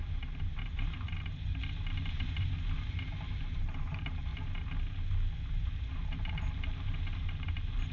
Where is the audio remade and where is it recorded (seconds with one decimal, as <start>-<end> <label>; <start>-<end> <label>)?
0.0-1.5 remade; 1.5-2.1 recorded; 2.1-4.3 remade; 4.3-5.5 recorded; 5.5-6.5 remade; 6.5-7.2 recorded; 7.2-7.9 remade